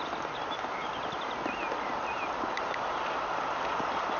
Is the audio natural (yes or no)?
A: yes